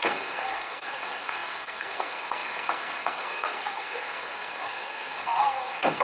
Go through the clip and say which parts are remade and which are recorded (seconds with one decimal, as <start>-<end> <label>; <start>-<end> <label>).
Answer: 0.0-6.0 remade